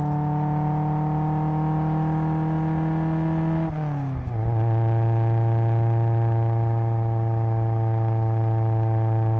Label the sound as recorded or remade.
recorded